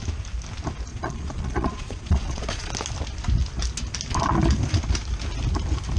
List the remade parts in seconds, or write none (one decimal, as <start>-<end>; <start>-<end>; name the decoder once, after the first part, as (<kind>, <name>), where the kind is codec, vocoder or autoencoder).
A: 0.9-2.7 (vocoder, Vocos)